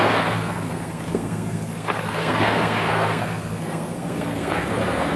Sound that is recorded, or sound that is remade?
remade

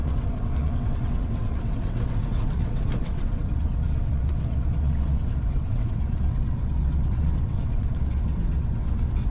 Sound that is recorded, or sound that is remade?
remade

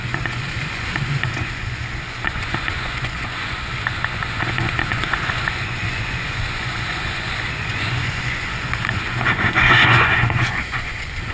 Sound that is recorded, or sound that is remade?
remade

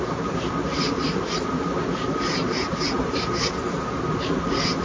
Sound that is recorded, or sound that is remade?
recorded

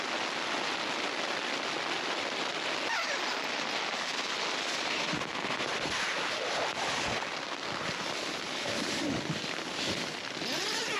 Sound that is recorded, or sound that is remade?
recorded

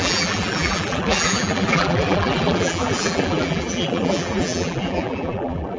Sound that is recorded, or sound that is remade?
remade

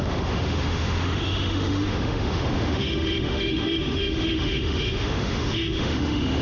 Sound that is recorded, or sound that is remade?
remade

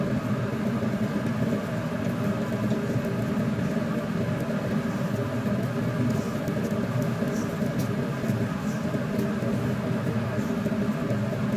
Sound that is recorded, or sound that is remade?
recorded